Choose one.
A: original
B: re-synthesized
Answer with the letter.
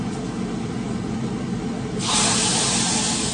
A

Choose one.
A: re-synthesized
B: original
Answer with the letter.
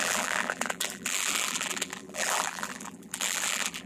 A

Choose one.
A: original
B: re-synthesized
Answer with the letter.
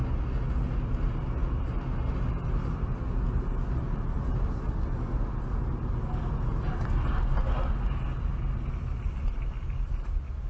A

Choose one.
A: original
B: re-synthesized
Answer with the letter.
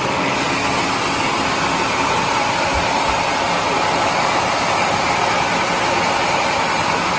A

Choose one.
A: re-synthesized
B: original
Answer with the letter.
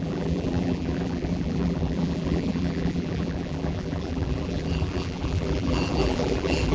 A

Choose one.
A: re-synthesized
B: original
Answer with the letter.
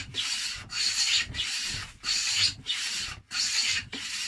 A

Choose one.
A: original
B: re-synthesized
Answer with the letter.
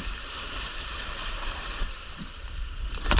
B